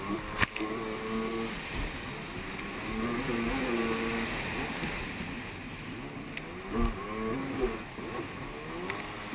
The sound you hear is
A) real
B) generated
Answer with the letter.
A